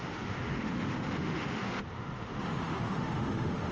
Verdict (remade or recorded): remade